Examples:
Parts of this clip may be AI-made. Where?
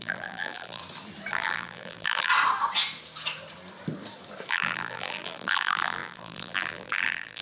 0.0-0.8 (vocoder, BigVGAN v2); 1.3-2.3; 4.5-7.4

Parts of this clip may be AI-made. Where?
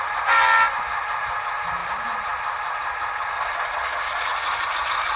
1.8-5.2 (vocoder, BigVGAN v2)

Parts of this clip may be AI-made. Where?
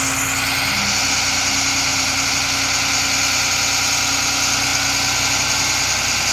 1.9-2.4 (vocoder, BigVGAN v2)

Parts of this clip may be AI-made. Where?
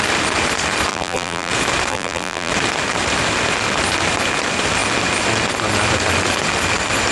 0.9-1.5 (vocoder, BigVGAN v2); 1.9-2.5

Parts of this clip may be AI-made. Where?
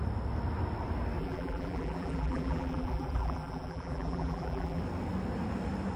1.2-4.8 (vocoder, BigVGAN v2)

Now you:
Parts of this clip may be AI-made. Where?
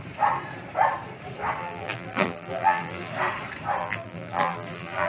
1.6-3.1 (vocoder, BigVGAN v2); 3.8-5.1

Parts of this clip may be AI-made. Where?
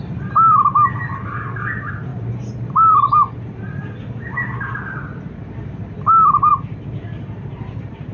2.1-3.4 (vocoder, BigVGAN v2); 3.8-5.0; 6.5-8.1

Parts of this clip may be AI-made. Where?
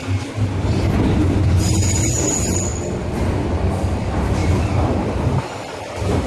4.4-6.3 (vocoder, BigVGAN v2)